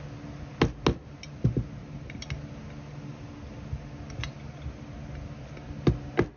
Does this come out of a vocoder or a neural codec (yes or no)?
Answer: no